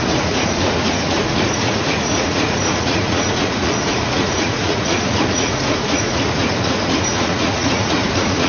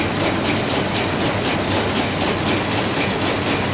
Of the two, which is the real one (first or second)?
second